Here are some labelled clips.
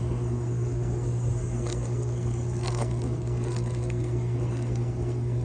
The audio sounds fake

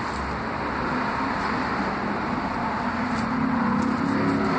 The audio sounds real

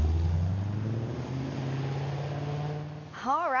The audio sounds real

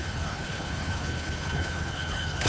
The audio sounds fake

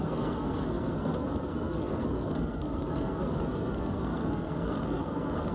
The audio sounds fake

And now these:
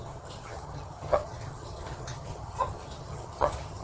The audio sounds fake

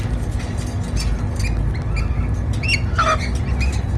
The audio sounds real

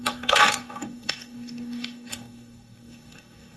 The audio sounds fake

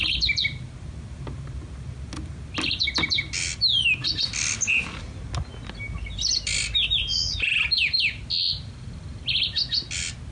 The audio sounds real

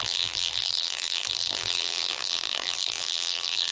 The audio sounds fake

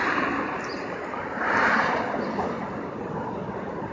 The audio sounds real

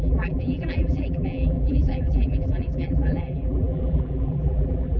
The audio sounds fake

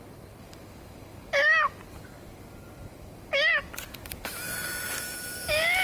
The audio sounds real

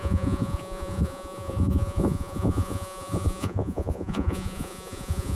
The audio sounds fake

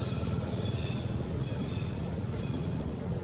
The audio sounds fake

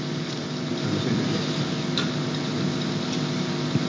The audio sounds real